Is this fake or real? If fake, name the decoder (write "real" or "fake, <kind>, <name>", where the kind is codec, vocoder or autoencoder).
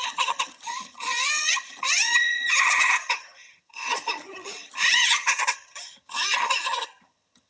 fake, vocoder, HiFi-GAN